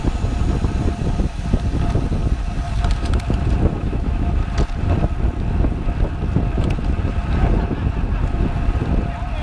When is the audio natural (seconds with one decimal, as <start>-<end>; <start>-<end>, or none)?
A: 0.0-3.7; 4.3-9.4